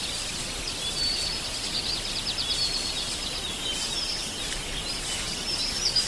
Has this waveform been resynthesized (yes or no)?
no